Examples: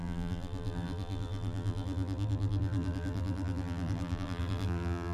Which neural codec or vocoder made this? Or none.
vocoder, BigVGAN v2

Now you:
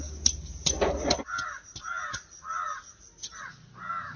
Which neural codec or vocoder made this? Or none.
none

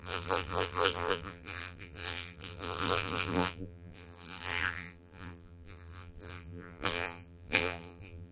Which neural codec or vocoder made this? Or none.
vocoder, BigVGAN v2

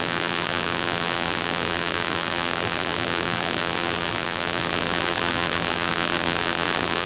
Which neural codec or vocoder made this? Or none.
vocoder, BigVGAN v2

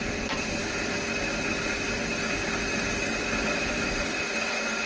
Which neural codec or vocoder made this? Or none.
vocoder, BigVGAN v2